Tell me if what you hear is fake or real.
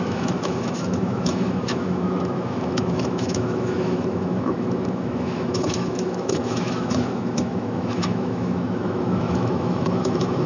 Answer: fake